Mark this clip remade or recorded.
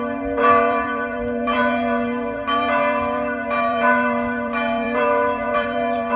remade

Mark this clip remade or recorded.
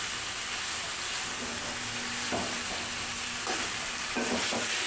recorded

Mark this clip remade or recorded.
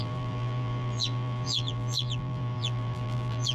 remade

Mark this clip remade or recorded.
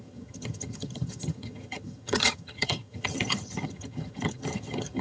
remade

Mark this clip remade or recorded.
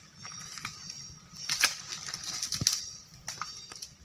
recorded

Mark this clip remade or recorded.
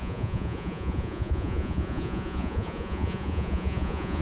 remade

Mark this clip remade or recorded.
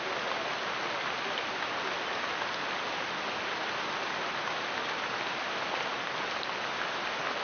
recorded